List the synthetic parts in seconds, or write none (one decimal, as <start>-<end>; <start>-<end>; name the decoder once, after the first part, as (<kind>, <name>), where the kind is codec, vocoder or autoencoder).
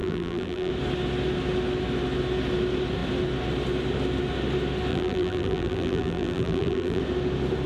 0.0-0.7 (vocoder, BigVGAN v2); 4.9-7.0